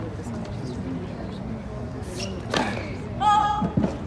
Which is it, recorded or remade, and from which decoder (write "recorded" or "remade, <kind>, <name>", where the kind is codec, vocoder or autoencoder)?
recorded